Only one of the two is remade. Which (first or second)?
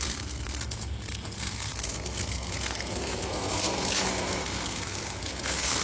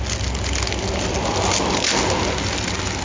first